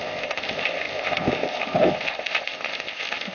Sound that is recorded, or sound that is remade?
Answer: remade